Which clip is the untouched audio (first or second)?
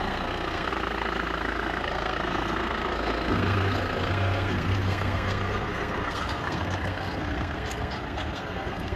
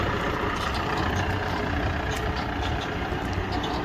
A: second